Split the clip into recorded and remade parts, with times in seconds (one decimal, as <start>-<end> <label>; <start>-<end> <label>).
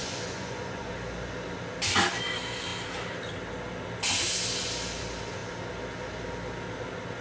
0.0-0.9 remade; 0.9-7.2 recorded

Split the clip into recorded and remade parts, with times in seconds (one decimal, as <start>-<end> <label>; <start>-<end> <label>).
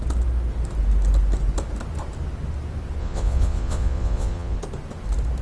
0.0-3.0 recorded; 3.0-4.6 remade; 4.6-5.4 recorded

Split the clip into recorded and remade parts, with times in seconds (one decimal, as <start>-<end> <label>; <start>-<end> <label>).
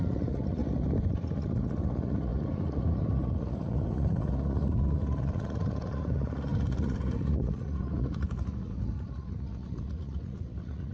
0.0-0.6 remade; 0.6-1.1 recorded; 1.1-10.9 remade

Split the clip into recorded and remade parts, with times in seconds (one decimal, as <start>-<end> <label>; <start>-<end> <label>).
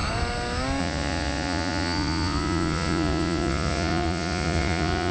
0.0-0.8 recorded; 0.8-5.1 remade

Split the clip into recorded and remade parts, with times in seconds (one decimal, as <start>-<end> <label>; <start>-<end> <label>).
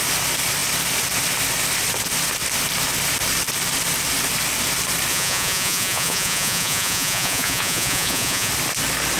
0.0-5.1 recorded; 5.1-8.5 remade; 8.5-9.2 recorded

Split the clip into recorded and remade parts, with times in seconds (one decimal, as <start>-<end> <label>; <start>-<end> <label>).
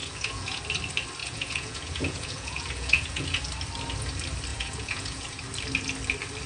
0.0-0.6 remade; 0.6-1.2 recorded; 1.2-3.4 remade; 3.4-4.5 recorded; 4.5-5.4 remade; 5.4-6.5 recorded